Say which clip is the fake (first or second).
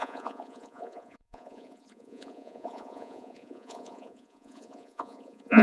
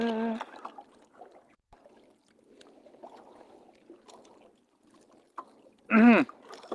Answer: first